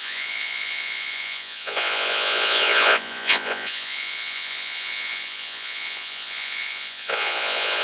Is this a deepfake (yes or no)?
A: yes